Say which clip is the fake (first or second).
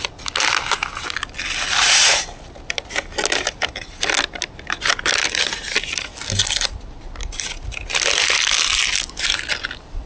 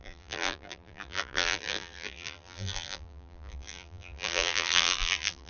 second